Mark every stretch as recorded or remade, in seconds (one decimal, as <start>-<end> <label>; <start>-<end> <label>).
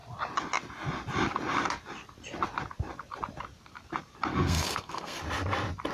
0.0-4.3 recorded; 4.3-5.2 remade; 5.2-5.9 recorded